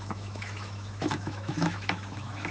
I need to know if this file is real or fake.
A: fake